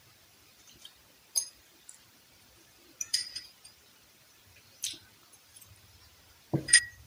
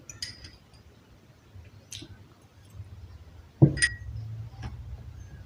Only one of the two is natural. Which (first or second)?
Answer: second